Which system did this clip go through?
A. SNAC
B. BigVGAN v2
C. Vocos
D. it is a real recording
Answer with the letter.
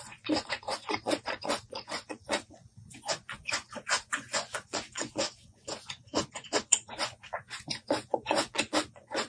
C